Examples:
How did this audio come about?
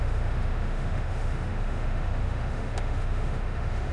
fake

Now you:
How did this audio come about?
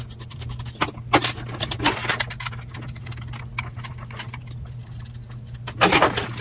real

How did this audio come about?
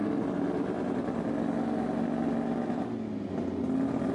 real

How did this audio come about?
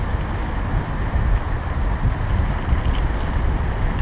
real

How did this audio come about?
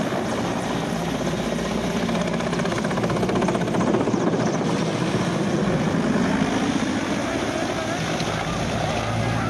real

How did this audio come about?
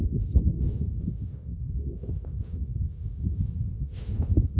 fake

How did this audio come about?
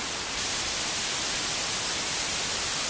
real